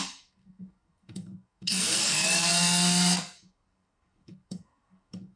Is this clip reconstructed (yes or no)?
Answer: yes